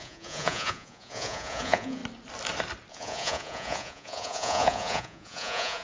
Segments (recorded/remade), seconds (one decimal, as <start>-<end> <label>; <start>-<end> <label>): 0.0-2.0 remade; 2.0-2.9 recorded; 2.9-5.8 remade